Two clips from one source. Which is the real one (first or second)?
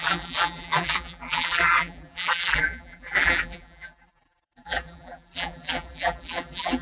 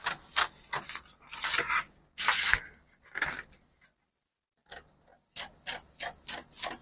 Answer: second